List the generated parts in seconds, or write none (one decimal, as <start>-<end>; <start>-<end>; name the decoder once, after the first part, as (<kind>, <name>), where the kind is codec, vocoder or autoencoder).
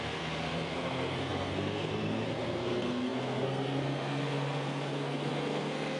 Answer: 0.0-6.0 (codec, SNAC)